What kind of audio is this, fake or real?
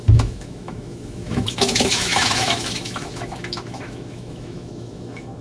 fake